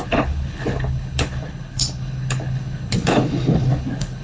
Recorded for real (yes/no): no